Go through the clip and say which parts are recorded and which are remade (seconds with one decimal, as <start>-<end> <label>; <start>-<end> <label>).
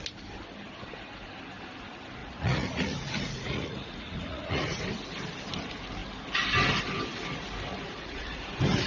0.0-2.2 recorded; 2.2-4.8 remade; 4.8-7.7 recorded; 7.7-8.4 remade; 8.4-8.9 recorded